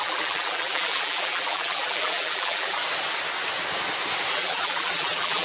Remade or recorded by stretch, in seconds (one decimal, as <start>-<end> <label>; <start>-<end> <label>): 0.0-2.8 remade; 2.8-4.3 recorded; 4.3-5.4 remade